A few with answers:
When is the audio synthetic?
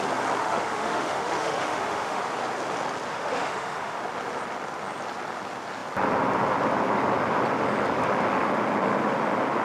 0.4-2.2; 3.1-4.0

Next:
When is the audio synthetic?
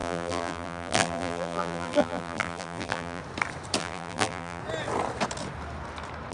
0.0-3.2; 3.8-4.6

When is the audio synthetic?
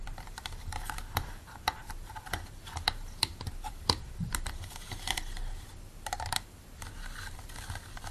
0.0-8.1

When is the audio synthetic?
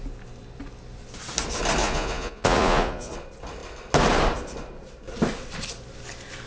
1.8-3.1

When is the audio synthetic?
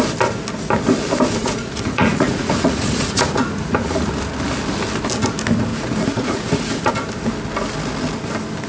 1.4-4.1; 5.7-6.9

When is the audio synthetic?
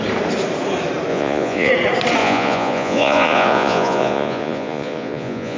1.1-1.7; 2.2-5.6